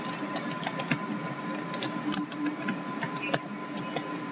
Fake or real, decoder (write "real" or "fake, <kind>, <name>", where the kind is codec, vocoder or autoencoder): real